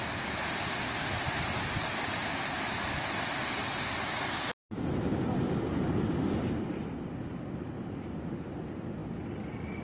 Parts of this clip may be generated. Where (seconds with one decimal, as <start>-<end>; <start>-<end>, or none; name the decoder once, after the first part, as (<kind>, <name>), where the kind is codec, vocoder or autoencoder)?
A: none